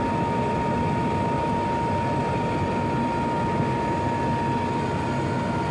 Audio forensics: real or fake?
real